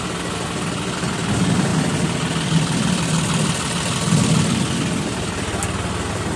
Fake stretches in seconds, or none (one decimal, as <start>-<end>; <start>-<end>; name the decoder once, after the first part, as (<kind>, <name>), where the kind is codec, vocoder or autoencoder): none

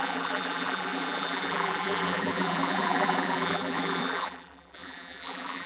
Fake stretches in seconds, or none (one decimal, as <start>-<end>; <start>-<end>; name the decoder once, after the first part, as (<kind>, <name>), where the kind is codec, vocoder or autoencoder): 0.0-5.7 (vocoder, BigVGAN v2)

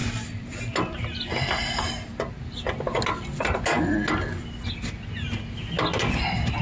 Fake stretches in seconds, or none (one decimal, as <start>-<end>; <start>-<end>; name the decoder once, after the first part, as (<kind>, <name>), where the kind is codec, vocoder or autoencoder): 0.0-0.6 (vocoder, BigVGAN v2)

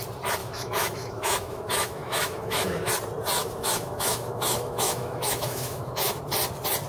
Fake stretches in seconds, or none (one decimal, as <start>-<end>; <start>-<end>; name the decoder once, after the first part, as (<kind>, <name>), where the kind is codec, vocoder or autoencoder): 0.4-2.9 (autoencoder, DAC-VAE); 3.4-6.2

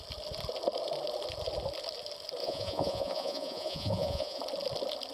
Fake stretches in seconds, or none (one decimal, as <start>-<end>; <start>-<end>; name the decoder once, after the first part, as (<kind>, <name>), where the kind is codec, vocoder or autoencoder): 2.4-4.4 (vocoder, Vocos)

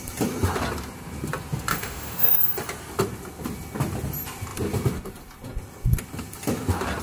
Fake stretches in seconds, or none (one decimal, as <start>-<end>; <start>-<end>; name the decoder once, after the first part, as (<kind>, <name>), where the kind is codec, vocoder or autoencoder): 1.7-2.4 (autoencoder, DAC-VAE)

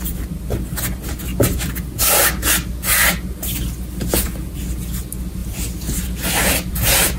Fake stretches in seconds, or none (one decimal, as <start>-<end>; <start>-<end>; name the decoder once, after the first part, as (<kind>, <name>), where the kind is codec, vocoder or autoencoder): 5.4-6.7 (vocoder, BigVGAN v2)